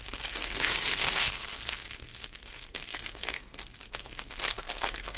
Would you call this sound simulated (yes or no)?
yes